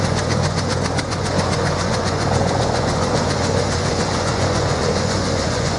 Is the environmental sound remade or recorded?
remade